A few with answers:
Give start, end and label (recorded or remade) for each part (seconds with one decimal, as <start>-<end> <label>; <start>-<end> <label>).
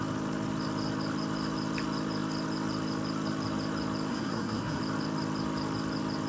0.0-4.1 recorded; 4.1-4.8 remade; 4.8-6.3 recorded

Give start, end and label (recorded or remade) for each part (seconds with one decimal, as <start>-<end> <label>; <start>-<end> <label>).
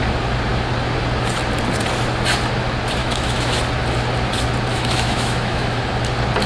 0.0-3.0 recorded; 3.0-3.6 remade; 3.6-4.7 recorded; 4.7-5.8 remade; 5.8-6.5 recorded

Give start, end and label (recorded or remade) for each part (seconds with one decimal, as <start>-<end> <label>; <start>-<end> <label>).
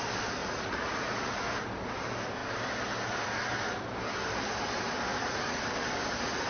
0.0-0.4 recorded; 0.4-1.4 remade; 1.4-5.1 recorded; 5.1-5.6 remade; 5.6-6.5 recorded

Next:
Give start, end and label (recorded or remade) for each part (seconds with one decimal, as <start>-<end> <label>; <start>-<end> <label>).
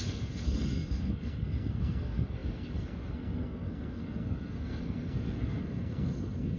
0.0-6.6 remade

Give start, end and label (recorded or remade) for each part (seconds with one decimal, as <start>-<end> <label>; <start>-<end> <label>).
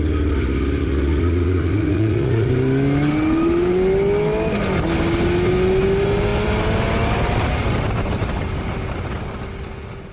0.0-0.8 recorded; 0.8-2.5 remade; 2.5-10.1 recorded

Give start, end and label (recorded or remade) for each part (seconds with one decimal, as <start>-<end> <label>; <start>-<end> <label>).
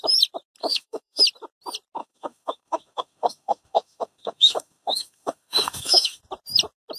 0.0-0.6 recorded; 0.6-1.2 remade; 1.2-2.0 recorded; 2.0-6.2 remade; 6.2-7.0 recorded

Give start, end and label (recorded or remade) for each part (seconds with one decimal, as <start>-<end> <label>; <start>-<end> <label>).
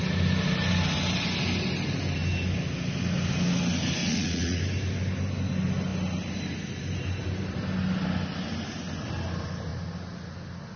0.0-4.0 recorded; 4.0-4.6 remade; 4.6-10.8 recorded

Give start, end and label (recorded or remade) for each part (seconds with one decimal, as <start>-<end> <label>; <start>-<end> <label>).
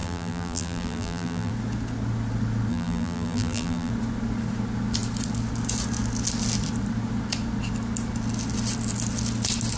0.0-1.5 remade; 1.5-2.7 recorded; 2.7-3.9 remade; 3.9-9.8 recorded